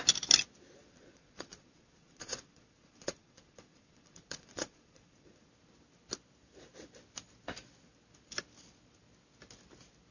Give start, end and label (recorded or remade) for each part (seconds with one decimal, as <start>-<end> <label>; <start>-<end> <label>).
0.0-0.8 recorded; 0.8-5.5 remade; 5.5-10.1 recorded